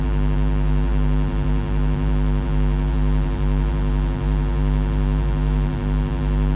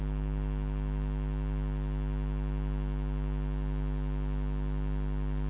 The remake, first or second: first